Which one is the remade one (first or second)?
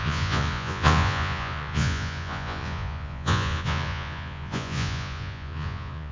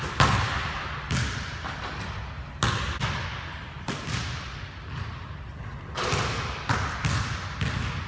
first